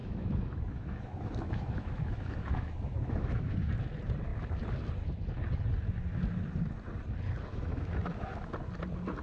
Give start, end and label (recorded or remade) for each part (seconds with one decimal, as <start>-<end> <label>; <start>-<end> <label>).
0.0-3.7 remade; 3.7-7.5 recorded; 7.5-8.5 remade; 8.5-9.2 recorded